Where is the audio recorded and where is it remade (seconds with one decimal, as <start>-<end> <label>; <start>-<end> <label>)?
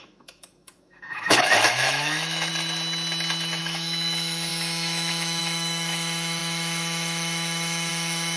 0.0-2.5 remade; 2.5-3.6 recorded; 3.6-8.4 remade